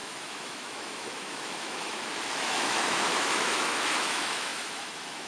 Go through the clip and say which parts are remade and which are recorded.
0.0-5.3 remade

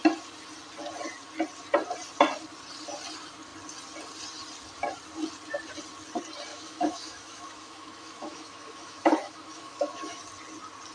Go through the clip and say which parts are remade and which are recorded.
0.0-6.5 recorded; 6.5-10.2 remade; 10.2-10.9 recorded

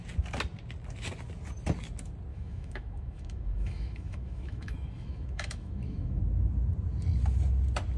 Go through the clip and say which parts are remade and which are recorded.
0.0-2.3 recorded; 2.3-6.2 remade; 6.2-8.0 recorded

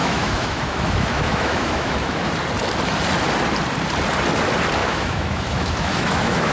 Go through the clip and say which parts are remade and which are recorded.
0.0-2.3 remade; 2.3-4.8 recorded; 4.8-6.5 remade